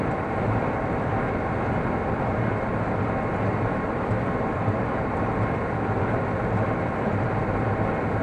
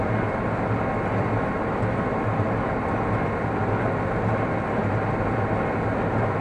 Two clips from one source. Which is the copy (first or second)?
first